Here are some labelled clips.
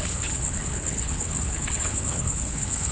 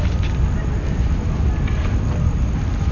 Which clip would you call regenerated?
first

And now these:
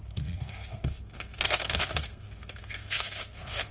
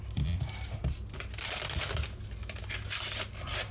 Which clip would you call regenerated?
first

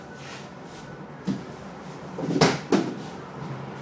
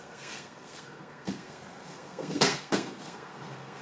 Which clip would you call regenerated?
second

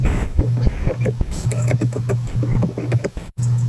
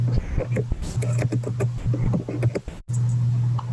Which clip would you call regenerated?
first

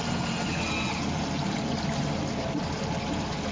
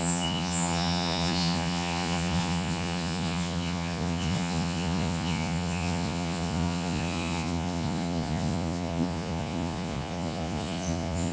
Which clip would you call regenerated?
second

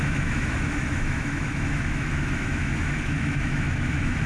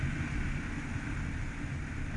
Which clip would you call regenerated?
first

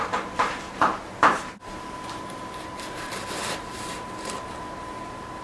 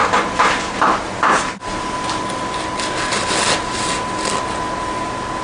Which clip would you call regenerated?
first